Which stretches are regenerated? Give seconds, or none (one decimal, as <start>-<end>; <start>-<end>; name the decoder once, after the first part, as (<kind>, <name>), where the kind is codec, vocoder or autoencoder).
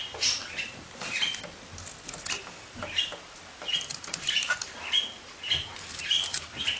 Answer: 2.2-6.8 (vocoder, BigVGAN v2)